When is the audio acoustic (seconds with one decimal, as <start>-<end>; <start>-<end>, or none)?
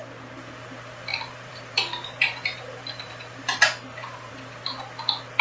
0.0-1.1; 4.3-5.4